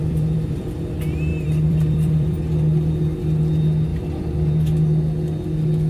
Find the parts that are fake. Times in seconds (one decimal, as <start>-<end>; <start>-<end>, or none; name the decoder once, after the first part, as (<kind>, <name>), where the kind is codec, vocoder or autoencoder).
0.0-0.8 (vocoder, BigVGAN v2); 1.3-2.4; 3.9-4.5